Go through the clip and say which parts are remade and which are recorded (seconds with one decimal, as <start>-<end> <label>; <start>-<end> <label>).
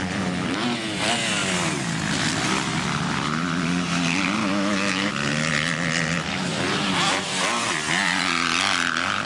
0.0-4.4 recorded; 4.4-5.1 remade; 5.1-9.3 recorded